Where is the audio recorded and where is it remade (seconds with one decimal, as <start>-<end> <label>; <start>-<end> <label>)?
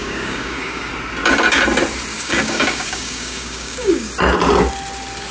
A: 0.0-0.9 remade; 0.9-2.1 recorded; 2.1-4.1 remade; 4.1-5.3 recorded